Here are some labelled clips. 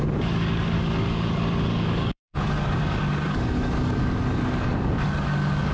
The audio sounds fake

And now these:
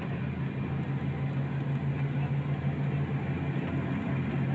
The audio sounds real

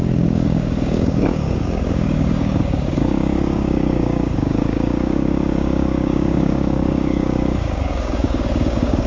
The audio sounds fake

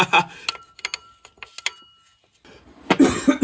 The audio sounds real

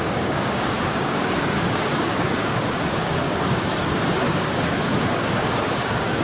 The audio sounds fake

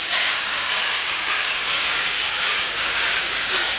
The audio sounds fake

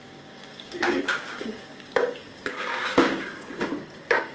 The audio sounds fake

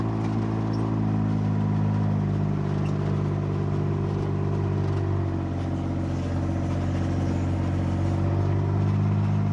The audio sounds real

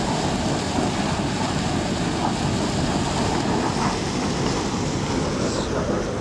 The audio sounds real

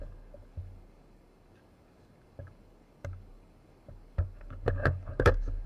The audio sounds fake